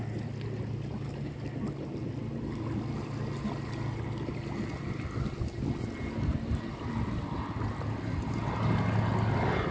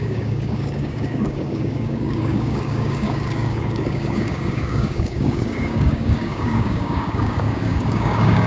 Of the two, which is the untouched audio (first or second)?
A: first